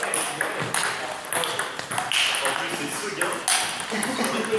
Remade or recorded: recorded